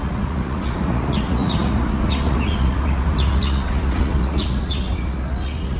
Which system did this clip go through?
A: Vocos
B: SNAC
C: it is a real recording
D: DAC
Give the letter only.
A